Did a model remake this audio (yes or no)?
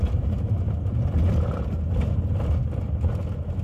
no